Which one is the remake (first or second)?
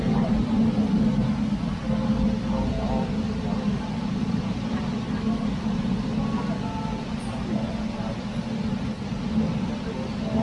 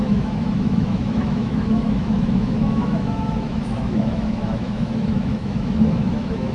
second